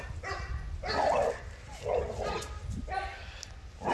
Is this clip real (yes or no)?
yes